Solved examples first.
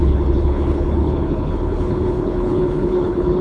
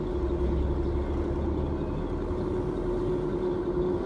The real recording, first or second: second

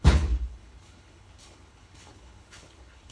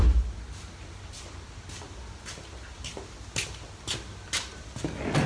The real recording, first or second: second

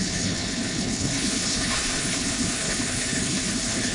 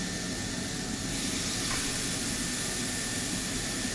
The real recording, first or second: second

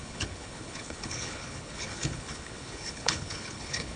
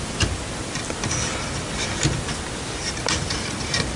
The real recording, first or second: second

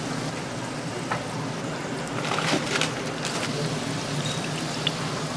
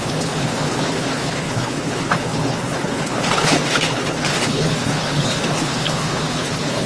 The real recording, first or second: first